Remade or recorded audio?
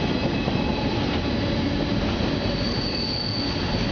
recorded